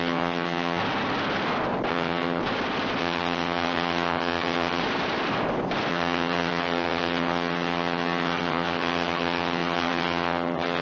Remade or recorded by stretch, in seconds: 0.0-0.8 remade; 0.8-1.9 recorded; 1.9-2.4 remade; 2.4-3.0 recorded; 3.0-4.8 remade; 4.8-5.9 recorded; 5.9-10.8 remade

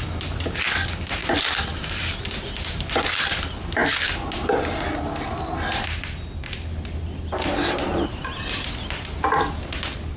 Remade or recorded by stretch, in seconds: 0.0-10.2 recorded

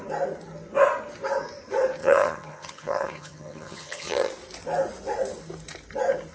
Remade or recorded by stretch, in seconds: 0.0-2.0 recorded; 2.0-4.3 remade; 4.3-6.3 recorded